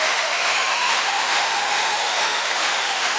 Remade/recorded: remade